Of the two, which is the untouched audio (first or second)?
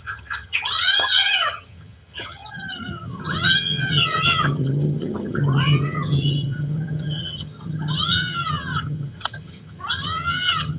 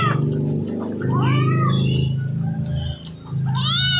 second